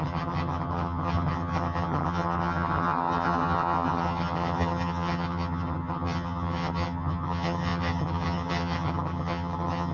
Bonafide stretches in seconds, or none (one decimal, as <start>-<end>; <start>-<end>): none